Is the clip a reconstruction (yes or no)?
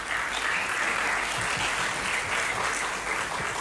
no